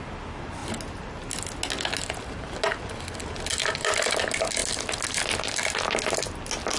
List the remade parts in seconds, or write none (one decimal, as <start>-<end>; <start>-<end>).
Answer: none